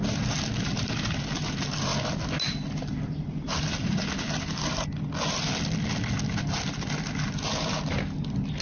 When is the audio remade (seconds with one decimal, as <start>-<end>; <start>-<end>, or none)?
none